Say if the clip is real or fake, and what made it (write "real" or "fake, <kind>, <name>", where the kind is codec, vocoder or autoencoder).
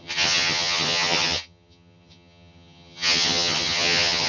fake, vocoder, HiFi-GAN